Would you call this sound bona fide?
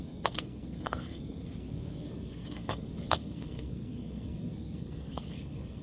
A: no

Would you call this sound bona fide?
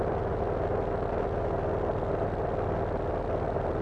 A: yes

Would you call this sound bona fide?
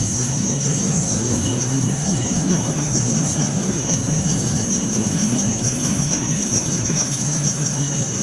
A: no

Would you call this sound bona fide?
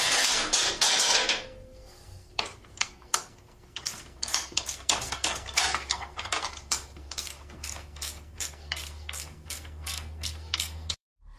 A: no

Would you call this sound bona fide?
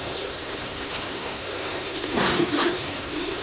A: no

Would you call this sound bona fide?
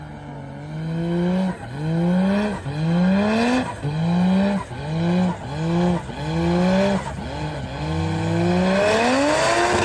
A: yes